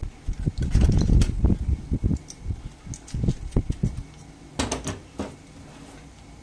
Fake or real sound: real